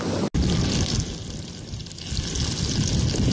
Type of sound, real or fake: real